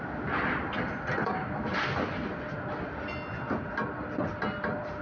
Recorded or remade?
recorded